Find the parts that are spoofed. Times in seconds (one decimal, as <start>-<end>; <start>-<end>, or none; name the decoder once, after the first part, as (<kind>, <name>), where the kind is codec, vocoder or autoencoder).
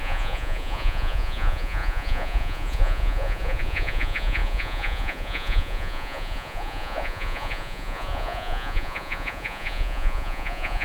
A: 0.0-10.8 (vocoder, Vocos)